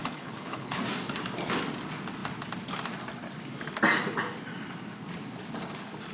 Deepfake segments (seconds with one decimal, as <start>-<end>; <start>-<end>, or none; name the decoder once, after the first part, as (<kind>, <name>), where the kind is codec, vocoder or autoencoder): 0.0-0.8 (codec, HILCodec)